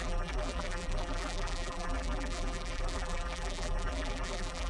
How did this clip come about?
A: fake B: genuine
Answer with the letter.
A